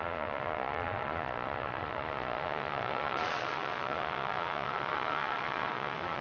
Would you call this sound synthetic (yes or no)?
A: yes